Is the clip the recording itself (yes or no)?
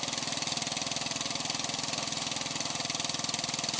yes